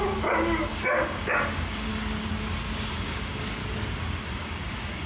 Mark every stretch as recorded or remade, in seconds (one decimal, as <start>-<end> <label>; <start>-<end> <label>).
0.0-1.9 remade; 1.9-2.9 recorded; 2.9-3.6 remade; 3.6-4.3 recorded; 4.3-5.1 remade